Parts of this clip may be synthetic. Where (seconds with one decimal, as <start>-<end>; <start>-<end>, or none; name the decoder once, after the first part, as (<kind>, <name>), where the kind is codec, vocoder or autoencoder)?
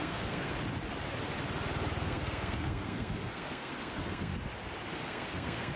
0.0-0.5 (codec, SNAC); 2.0-4.3; 4.9-5.8